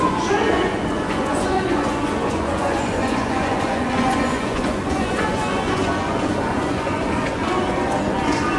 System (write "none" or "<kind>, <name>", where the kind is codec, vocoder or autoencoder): vocoder, Vocos